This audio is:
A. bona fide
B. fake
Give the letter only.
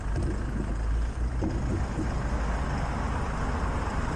A